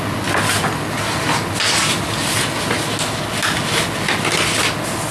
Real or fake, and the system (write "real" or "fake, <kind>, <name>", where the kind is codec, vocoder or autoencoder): real